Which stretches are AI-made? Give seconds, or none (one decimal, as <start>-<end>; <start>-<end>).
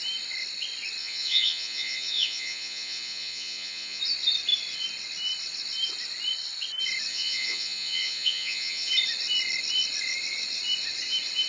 1.0-4.0; 7.1-8.9